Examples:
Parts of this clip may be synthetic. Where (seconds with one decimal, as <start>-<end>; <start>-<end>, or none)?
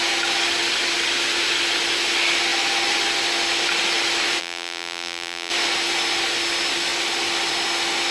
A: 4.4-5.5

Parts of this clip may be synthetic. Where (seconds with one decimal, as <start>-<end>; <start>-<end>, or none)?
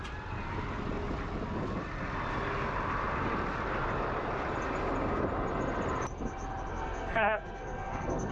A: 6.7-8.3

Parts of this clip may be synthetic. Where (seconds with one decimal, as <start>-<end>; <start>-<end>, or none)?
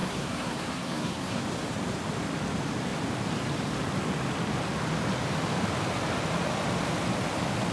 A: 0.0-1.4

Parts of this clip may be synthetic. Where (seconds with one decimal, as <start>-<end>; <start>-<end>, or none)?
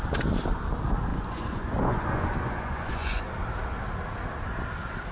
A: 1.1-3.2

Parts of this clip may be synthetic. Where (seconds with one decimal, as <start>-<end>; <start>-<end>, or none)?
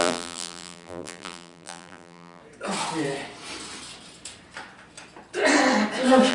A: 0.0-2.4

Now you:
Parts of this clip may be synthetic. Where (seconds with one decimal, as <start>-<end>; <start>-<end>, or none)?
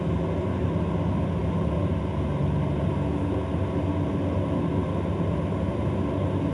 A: none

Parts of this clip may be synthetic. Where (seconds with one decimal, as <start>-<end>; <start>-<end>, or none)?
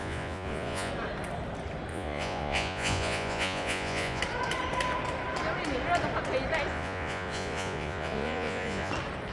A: 0.0-0.9; 1.9-4.2; 6.7-8.9